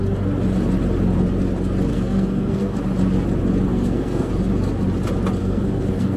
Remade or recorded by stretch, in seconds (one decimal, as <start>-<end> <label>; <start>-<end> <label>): 0.0-1.9 recorded; 1.9-2.8 remade; 2.8-3.7 recorded; 3.7-4.3 remade; 4.3-5.4 recorded; 5.4-6.2 remade